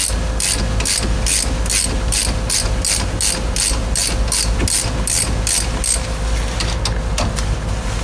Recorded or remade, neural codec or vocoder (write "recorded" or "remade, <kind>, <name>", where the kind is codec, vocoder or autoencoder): recorded